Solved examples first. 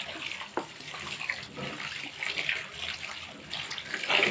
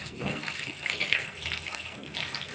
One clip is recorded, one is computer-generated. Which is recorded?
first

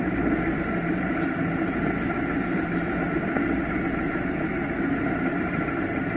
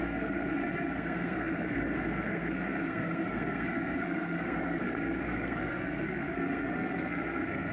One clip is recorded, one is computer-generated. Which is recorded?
first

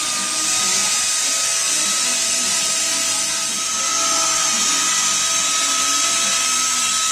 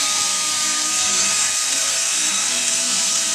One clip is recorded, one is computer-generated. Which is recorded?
first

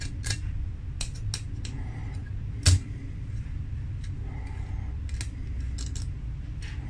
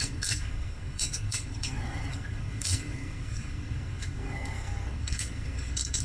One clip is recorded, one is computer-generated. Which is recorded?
first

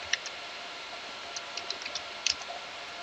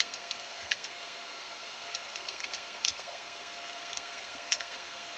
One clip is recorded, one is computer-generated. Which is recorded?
first